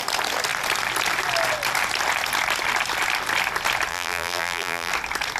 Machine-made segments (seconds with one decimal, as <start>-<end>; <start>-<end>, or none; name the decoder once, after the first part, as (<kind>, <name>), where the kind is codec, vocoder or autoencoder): 3.9-4.9 (vocoder, BigVGAN v2)